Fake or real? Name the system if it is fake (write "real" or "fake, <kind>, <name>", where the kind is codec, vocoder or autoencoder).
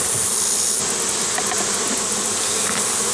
real